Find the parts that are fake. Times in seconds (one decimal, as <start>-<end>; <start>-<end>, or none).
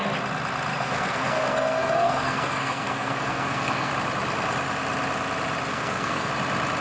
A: 0.7-3.9; 5.7-6.3